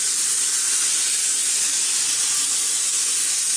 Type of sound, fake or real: real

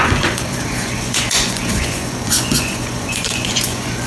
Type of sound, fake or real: fake